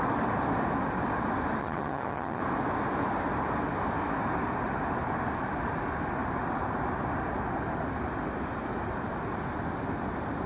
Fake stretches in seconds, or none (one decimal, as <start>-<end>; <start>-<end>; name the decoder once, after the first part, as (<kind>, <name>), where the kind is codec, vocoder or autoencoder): 1.6-2.4 (vocoder, HiFi-GAN)